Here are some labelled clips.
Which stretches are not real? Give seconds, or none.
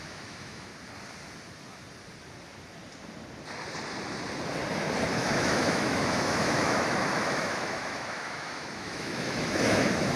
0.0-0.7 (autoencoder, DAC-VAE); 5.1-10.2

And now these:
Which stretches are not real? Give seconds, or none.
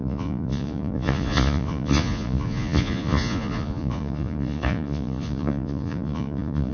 0.0-6.7 (vocoder, Vocos)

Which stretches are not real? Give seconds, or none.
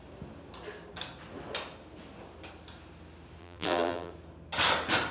3.4-4.1 (vocoder, BigVGAN v2)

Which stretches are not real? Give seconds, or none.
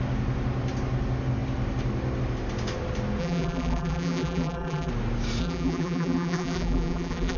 3.2-4.9 (vocoder, BigVGAN v2); 5.4-7.4